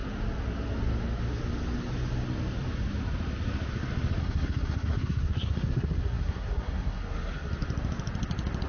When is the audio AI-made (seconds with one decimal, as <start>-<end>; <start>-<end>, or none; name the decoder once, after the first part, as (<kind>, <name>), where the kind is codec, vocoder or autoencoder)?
4.2-7.5 (codec, SNAC)